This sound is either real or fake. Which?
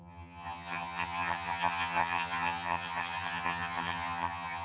fake